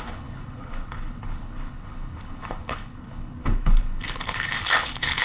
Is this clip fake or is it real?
fake